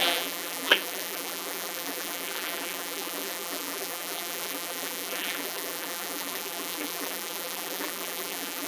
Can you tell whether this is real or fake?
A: fake